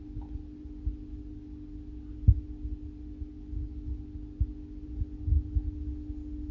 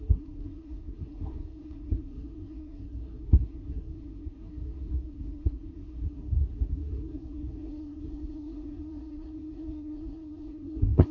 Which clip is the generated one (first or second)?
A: second